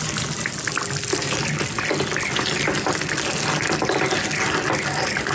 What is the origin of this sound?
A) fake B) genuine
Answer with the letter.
B